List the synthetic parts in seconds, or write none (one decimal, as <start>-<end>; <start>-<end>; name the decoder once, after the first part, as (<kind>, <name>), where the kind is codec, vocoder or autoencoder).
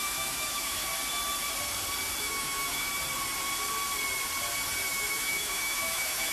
0.0-0.9 (autoencoder, DAC-VAE); 2.2-2.9; 4.9-6.3